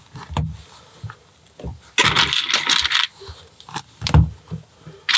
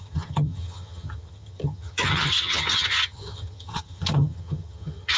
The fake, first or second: second